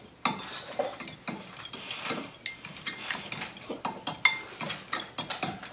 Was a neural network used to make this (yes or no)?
no